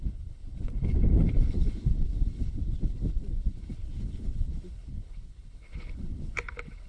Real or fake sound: fake